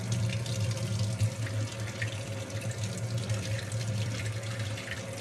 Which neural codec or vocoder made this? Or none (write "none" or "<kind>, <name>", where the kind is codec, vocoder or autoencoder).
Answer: none